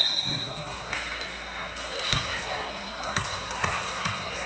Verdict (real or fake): fake